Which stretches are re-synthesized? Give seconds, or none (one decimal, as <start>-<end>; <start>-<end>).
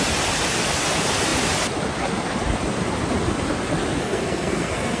4.0-5.0